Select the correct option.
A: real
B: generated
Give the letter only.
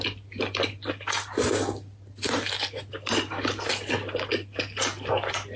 A